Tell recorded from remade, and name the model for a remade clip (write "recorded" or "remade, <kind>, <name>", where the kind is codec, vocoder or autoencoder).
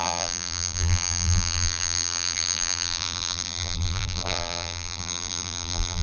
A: remade, vocoder, BigVGAN v2